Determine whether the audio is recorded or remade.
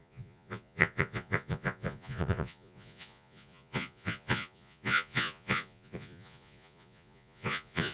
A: remade